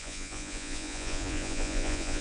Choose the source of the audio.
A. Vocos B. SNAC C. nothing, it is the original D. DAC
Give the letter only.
A